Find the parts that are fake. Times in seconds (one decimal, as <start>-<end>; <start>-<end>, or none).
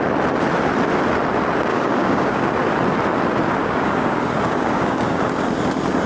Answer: 1.7-2.5; 3.6-5.2